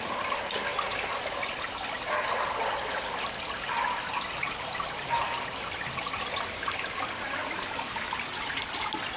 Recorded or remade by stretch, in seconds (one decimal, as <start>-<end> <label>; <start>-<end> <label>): 0.0-9.2 recorded